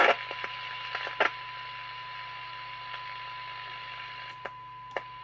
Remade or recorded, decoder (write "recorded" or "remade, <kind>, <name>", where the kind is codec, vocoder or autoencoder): recorded